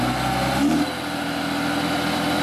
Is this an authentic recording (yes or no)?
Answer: yes